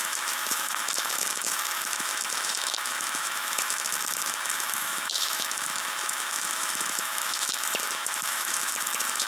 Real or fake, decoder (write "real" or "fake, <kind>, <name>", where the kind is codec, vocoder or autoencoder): fake, autoencoder, DAC-VAE